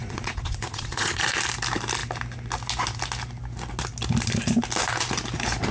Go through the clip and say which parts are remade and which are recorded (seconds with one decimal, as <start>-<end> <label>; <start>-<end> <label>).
0.0-1.2 remade; 1.2-5.7 recorded